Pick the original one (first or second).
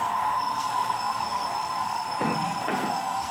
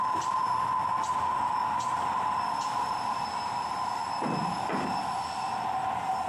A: second